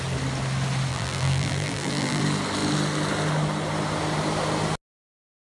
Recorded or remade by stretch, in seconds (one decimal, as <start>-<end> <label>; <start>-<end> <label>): 0.0-0.9 recorded; 0.9-2.2 remade; 2.2-5.4 recorded